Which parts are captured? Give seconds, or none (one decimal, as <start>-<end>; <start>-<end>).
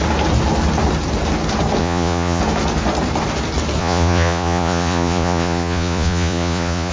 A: 0.0-1.8; 2.4-3.8